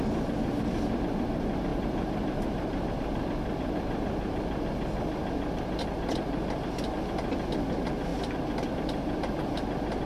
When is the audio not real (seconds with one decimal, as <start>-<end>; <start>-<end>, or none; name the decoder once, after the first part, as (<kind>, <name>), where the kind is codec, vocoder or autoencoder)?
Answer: 1.7-2.9 (vocoder, BigVGAN v2)

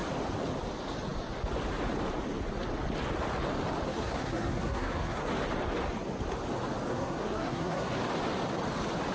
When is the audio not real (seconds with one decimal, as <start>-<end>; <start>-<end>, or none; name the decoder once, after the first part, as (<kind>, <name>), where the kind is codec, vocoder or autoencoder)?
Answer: 3.9-5.2 (codec, SNAC); 6.9-7.9